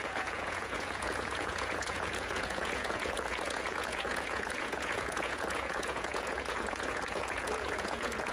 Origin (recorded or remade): remade